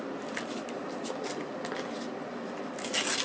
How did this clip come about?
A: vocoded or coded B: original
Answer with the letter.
B